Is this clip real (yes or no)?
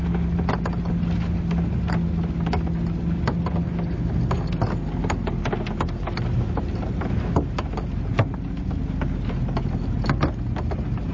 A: yes